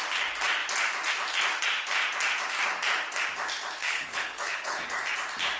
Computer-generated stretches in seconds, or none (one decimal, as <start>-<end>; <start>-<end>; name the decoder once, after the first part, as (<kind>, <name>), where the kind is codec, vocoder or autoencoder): 3.8-4.8 (codec, HILCodec)

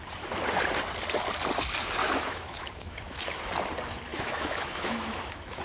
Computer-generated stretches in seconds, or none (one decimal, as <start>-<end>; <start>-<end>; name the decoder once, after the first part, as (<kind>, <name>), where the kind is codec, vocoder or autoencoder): 2.0-3.4 (autoencoder, DAC-VAE); 4.1-5.6

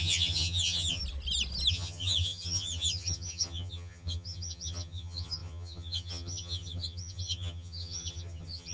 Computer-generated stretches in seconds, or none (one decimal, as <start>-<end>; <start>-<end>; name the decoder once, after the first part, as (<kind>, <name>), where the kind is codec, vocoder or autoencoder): 0.0-1.0 (vocoder, HiFi-GAN); 1.7-8.7

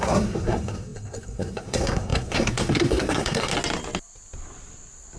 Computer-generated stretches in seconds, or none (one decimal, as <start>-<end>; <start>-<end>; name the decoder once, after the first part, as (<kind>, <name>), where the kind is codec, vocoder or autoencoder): 0.0-3.5 (codec, SNAC)

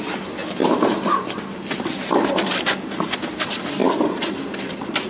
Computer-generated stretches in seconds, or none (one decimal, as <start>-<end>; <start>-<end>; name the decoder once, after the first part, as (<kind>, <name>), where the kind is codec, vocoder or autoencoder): none

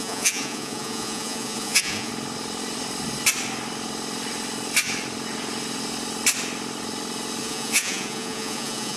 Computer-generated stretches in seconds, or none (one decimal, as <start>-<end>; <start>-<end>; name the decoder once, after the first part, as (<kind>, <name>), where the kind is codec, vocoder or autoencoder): 0.0-2.1 (vocoder, Vocos); 7.4-9.0